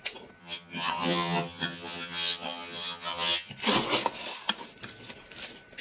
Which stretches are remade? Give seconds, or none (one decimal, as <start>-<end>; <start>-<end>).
0.4-3.5

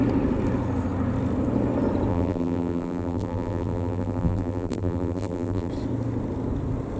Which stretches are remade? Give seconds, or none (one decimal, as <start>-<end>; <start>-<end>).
2.1-5.7

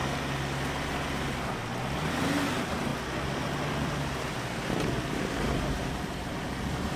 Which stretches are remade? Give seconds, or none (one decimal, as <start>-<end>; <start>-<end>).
2.0-2.9; 5.3-7.0